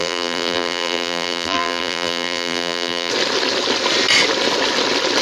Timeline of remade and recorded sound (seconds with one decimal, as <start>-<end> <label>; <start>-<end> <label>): 0.0-3.1 remade; 3.1-5.2 recorded